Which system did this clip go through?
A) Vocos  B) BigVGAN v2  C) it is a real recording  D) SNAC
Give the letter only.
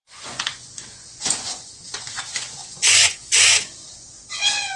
A